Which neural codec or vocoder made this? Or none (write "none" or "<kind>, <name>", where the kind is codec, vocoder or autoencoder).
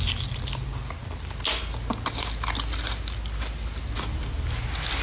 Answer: none